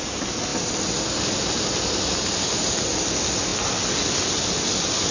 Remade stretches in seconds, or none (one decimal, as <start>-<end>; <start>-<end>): none